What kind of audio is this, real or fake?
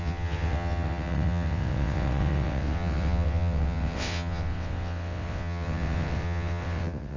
fake